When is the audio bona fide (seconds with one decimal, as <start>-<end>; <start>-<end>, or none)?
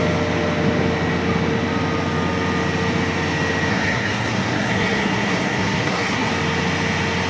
0.0-3.7; 6.3-7.3